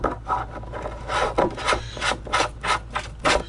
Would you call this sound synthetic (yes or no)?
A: no